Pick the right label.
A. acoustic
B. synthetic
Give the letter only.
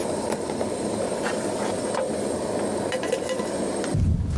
A